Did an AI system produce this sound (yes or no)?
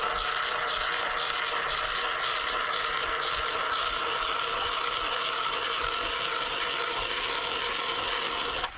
no